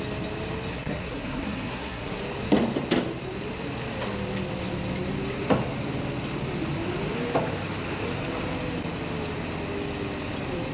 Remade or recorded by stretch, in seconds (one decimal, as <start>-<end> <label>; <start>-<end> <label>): 0.0-0.7 recorded; 0.7-2.2 remade; 2.2-10.7 recorded